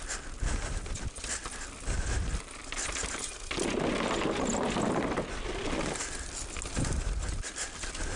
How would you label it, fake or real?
real